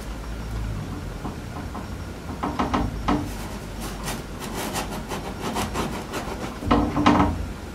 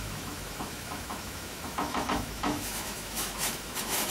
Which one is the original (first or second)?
first